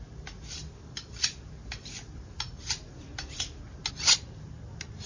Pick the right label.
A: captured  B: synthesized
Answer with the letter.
A